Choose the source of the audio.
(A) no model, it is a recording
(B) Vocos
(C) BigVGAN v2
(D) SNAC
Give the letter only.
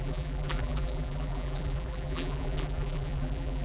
C